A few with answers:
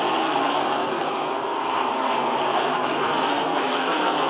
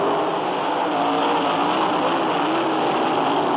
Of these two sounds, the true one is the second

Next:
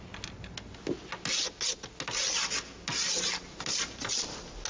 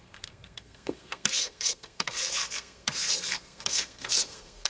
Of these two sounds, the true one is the first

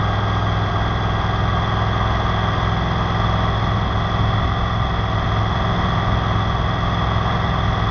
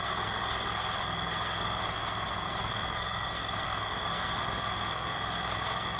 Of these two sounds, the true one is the first